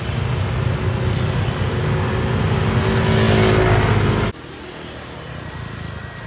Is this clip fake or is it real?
real